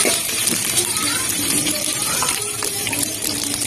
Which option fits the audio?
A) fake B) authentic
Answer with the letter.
A